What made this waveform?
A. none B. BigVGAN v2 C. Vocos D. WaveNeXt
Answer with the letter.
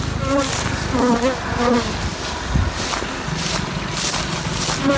A